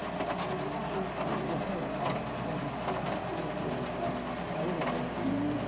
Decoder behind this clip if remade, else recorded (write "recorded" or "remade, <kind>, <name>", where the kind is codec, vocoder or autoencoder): recorded